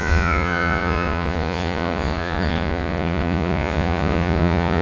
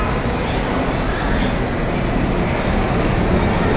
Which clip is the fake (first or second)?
first